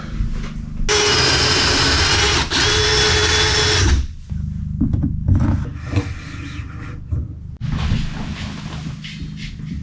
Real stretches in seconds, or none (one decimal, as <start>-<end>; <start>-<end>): 0.0-9.8